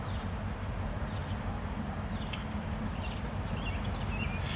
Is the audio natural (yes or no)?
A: no